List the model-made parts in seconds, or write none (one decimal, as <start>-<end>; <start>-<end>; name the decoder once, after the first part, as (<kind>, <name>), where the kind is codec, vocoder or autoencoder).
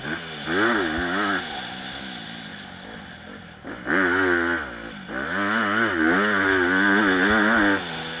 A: none